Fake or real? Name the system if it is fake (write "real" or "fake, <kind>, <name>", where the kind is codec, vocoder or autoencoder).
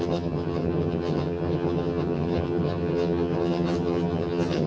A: fake, vocoder, HiFi-GAN